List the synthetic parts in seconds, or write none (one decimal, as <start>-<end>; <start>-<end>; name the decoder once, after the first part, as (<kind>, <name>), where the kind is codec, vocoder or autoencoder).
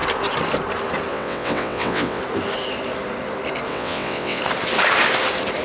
1.1-2.2 (vocoder, WaveNeXt); 3.7-4.4